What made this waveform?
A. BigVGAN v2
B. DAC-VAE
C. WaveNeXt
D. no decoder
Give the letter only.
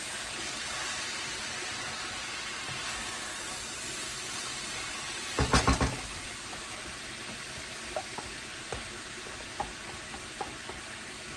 D